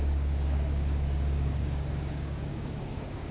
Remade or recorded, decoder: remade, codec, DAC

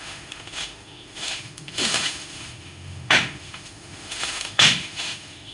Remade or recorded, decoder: remade, autoencoder, DAC-VAE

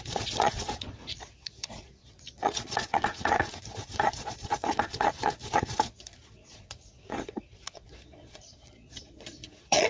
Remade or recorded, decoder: remade, vocoder, Vocos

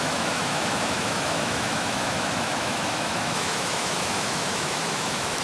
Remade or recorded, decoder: remade, autoencoder, DAC-VAE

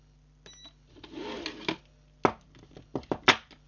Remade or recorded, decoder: recorded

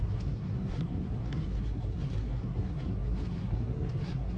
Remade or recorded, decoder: remade, codec, SNAC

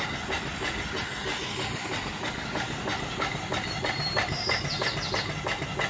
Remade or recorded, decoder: recorded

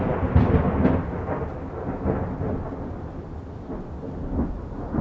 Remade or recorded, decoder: recorded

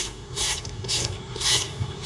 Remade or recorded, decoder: remade, codec, SNAC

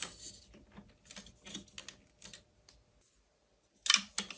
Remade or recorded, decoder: recorded